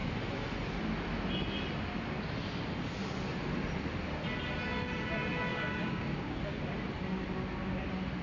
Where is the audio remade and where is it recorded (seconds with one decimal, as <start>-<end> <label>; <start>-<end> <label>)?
0.0-5.5 recorded; 5.5-6.4 remade; 6.4-8.2 recorded